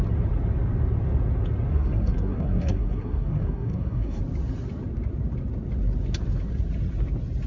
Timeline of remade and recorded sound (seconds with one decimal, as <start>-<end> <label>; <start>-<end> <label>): 0.0-1.7 recorded; 1.7-4.2 remade; 4.2-7.5 recorded

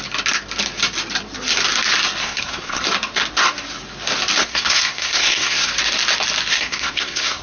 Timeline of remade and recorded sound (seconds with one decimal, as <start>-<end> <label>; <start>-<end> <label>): 0.0-2.2 recorded; 2.2-2.8 remade; 2.8-4.4 recorded; 4.4-5.7 remade; 5.7-6.5 recorded; 6.5-7.4 remade

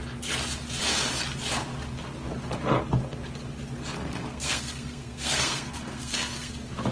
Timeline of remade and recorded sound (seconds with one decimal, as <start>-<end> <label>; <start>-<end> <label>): 0.0-4.3 recorded; 4.3-6.5 remade; 6.5-6.9 recorded

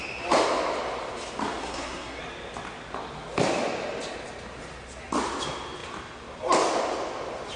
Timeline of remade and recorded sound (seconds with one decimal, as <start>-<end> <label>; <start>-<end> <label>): 0.0-1.6 recorded; 1.6-2.2 remade; 2.2-7.6 recorded

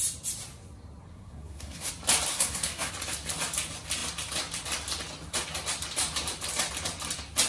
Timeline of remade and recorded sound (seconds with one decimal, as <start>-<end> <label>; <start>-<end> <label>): 0.0-1.1 recorded; 1.1-1.9 remade; 1.9-2.3 recorded; 2.3-2.9 remade; 2.9-7.5 recorded